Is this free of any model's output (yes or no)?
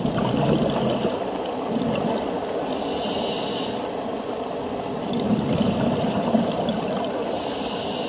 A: yes